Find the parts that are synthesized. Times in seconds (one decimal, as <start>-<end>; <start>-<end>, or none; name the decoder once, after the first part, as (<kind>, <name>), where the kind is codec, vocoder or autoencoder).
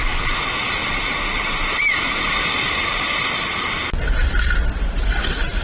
none